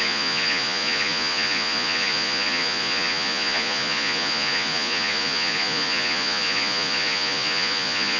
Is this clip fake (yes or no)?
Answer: yes